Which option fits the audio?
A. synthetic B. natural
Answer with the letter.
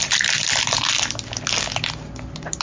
B